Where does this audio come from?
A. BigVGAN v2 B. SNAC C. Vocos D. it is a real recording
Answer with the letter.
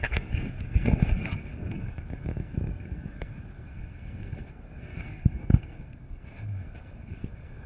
B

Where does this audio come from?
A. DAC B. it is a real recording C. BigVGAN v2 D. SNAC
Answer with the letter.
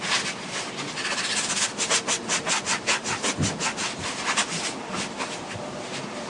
B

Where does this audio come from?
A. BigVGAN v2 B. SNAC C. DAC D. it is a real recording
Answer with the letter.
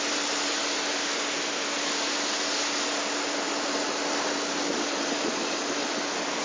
D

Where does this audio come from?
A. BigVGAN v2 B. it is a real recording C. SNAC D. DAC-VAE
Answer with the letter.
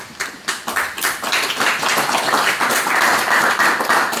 B